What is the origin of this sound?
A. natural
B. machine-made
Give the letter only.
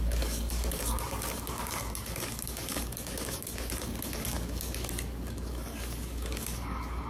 B